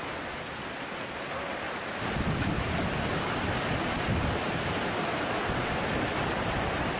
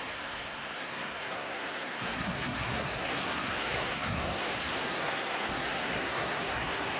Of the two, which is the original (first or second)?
first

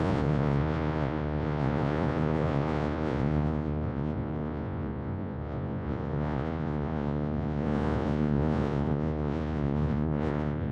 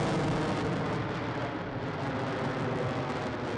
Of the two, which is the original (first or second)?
second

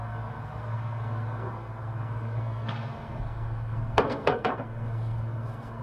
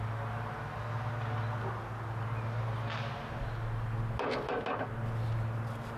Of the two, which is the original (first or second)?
second